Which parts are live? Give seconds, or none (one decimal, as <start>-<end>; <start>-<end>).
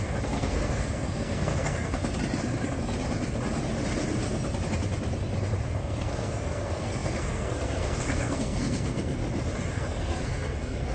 2.0-5.6; 9.2-9.7